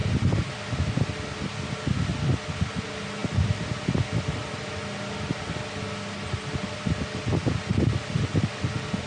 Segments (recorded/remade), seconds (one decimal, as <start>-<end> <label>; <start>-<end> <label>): 0.0-9.1 recorded